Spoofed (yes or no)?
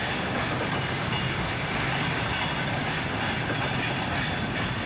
no